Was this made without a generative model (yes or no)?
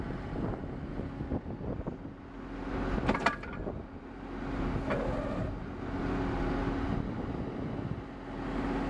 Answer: yes